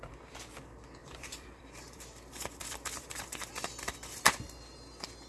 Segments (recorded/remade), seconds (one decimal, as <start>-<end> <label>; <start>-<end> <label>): 0.0-1.0 recorded; 1.0-4.2 remade; 4.2-5.3 recorded